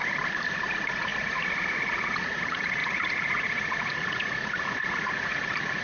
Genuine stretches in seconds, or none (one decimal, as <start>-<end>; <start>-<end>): 0.0-0.5